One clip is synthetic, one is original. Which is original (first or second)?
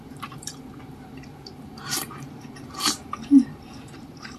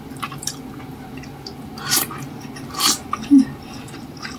second